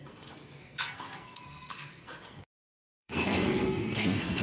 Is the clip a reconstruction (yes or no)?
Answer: yes